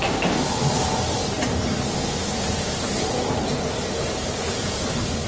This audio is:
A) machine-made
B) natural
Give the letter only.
B